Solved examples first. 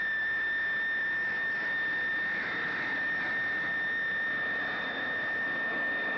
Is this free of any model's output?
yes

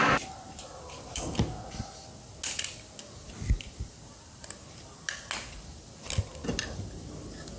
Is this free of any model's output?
yes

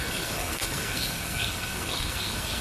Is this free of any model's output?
no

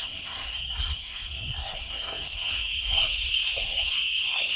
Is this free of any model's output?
no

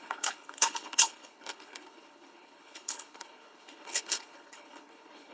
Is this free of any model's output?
no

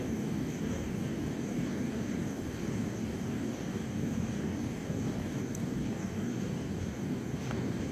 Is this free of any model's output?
no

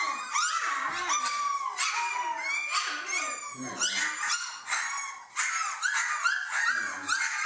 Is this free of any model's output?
yes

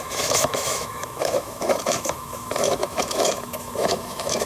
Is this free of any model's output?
no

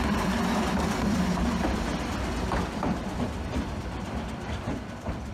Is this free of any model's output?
no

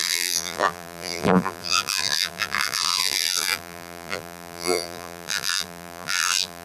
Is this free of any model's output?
no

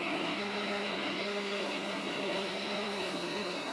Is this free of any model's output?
no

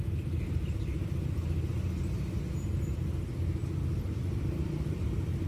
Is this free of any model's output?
yes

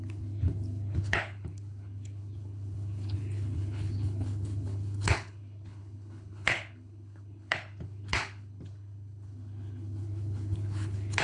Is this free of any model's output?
no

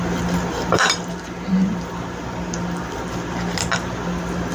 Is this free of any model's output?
no